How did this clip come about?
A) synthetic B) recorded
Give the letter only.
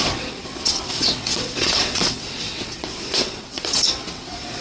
A